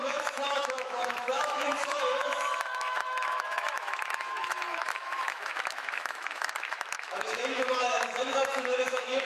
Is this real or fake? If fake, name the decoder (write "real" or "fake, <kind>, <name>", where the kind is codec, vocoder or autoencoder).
fake, autoencoder, DAC-VAE